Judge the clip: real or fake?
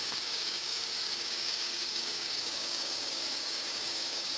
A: fake